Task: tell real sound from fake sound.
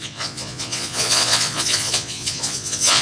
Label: fake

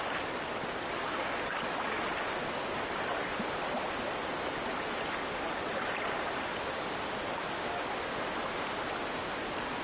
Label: real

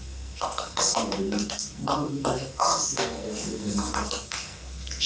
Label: fake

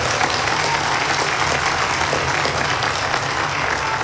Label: real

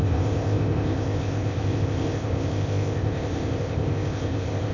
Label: fake